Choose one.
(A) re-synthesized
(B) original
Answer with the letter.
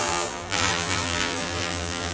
A